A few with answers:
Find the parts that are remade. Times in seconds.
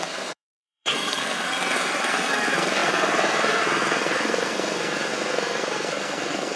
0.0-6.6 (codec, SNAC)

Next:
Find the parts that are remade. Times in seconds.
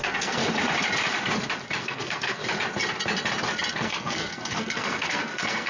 0.0-0.4 (codec, SNAC); 1.8-2.4; 3.7-5.7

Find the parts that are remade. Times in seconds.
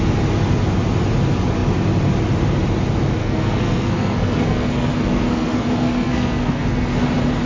3.2-7.0 (codec, SNAC)